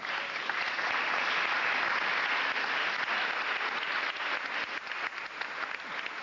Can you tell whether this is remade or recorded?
recorded